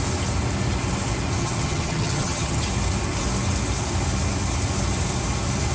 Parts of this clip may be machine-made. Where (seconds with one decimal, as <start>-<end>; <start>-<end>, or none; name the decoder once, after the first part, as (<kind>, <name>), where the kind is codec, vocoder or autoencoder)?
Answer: 1.4-2.6 (vocoder, HiFi-GAN)